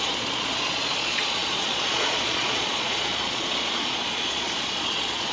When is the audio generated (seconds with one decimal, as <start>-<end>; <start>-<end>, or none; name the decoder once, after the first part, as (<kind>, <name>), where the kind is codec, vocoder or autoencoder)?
0.0-5.3 (vocoder, Vocos)